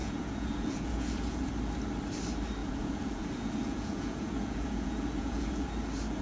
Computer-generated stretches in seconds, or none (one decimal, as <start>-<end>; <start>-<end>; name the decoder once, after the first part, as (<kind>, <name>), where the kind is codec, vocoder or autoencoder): 0.0-1.5 (vocoder, Vocos); 2.6-5.7